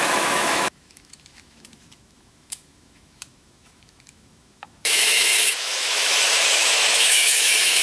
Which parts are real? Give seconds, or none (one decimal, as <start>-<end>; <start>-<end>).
none